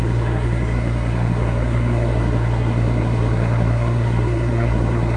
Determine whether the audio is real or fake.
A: fake